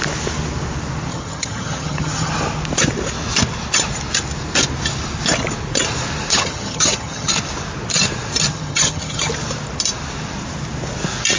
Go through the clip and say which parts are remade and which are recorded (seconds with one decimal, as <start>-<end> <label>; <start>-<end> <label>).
0.0-1.1 recorded; 1.1-2.3 remade; 2.3-6.3 recorded; 6.3-7.3 remade; 7.3-8.5 recorded; 8.5-9.3 remade; 9.3-11.4 recorded

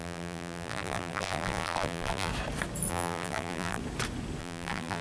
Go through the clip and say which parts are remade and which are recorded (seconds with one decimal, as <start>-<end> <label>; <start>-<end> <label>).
0.0-2.3 remade; 2.3-2.9 recorded; 2.9-3.8 remade; 3.8-4.4 recorded; 4.4-5.0 remade

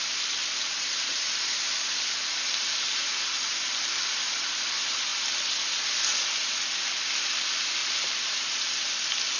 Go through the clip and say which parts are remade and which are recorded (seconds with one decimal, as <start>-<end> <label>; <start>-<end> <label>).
0.0-0.4 recorded; 0.4-4.4 remade; 4.4-7.8 recorded; 7.8-9.0 remade; 9.0-9.4 recorded

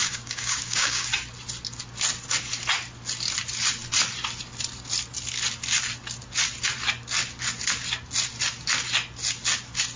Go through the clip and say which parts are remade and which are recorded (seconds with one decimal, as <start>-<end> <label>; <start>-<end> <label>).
0.0-1.1 remade; 1.1-10.0 recorded

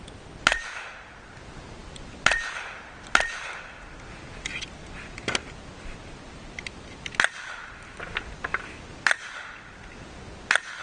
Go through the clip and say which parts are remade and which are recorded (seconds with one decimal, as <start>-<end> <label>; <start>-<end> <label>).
0.0-10.8 recorded

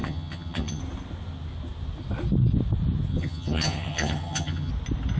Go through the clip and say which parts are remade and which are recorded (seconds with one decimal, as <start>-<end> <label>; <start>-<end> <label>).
0.0-0.8 remade; 0.8-3.1 recorded; 3.1-4.7 remade; 4.7-5.2 recorded

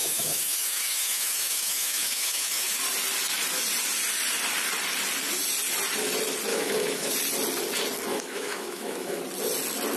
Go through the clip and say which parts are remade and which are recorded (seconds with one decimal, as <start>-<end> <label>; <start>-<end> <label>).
0.0-2.8 remade; 2.8-6.5 recorded; 6.5-7.1 remade; 7.1-8.1 recorded; 8.1-9.2 remade; 9.2-10.0 recorded

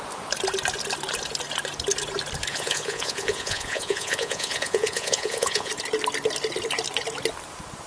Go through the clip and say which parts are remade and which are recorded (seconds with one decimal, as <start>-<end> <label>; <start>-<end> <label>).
0.0-2.5 recorded; 2.5-5.7 remade; 5.7-7.9 recorded